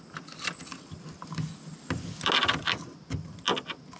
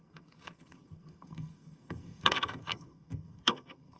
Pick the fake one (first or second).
second